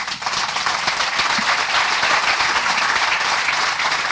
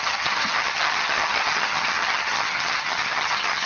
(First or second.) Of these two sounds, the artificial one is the second